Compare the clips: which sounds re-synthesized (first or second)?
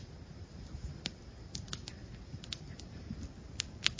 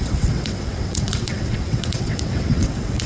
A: second